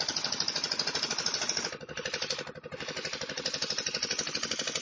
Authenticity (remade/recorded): recorded